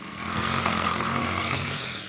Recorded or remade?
remade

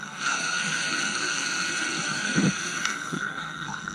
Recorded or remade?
remade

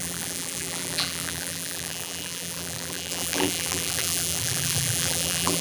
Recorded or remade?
remade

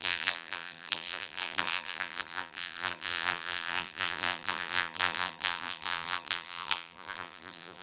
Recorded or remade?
remade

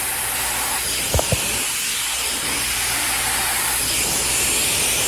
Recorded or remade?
recorded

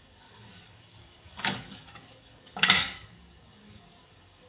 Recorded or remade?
remade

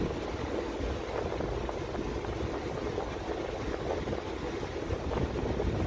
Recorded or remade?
recorded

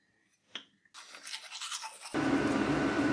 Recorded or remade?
recorded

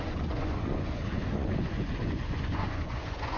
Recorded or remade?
remade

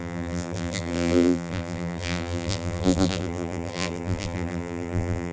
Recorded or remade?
remade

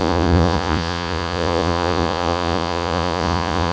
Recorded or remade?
remade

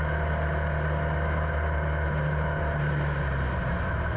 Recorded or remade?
recorded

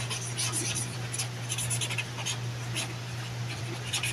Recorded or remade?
remade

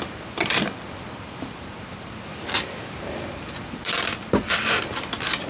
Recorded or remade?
remade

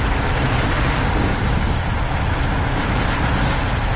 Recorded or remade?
recorded